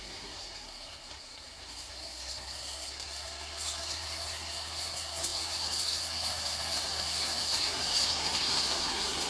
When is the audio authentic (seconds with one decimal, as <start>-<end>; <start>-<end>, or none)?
none